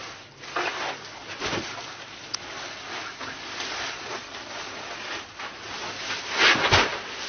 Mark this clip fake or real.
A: real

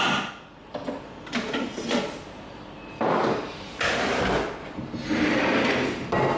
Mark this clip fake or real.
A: real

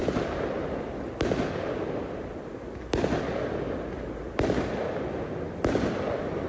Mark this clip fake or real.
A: real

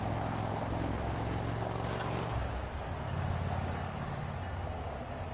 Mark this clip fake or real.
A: real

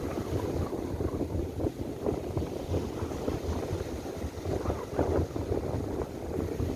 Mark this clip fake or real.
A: real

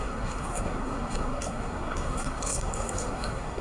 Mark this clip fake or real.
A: fake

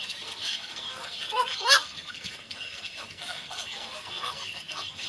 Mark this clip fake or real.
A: fake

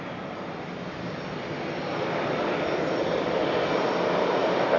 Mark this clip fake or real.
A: real